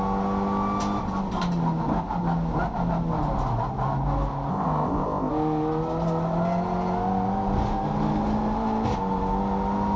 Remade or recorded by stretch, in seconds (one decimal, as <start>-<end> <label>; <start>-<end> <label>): 0.0-4.5 recorded; 4.5-5.3 remade; 5.3-10.0 recorded